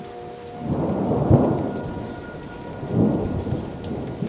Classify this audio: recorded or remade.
recorded